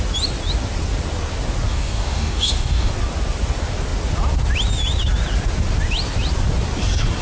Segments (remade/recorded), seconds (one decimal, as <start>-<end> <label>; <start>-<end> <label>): 0.0-1.7 recorded; 1.7-2.9 remade; 2.9-7.2 recorded